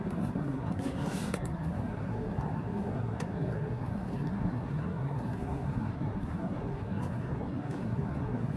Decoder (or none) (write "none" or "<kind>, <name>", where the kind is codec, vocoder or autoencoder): codec, SNAC